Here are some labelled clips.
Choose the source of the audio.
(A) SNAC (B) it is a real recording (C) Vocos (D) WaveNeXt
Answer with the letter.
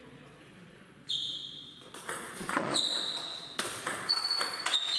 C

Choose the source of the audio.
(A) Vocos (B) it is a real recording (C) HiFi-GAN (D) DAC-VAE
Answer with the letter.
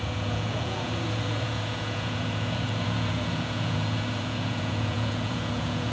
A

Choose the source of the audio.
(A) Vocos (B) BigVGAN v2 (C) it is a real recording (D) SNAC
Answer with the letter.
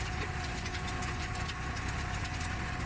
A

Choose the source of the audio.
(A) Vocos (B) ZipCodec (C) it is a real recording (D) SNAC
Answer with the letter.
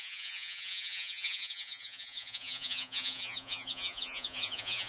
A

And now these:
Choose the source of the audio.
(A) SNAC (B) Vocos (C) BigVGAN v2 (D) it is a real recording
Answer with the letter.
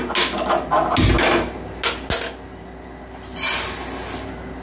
D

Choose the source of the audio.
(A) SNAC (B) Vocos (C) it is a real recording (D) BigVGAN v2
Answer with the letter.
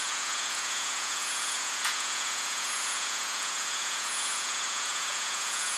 B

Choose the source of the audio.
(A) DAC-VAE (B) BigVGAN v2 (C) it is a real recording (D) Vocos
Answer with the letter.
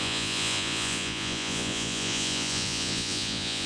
D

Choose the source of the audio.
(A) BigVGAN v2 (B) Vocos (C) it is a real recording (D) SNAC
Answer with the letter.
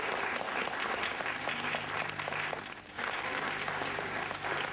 C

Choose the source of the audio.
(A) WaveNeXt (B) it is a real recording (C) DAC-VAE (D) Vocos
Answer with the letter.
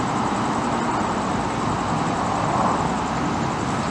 B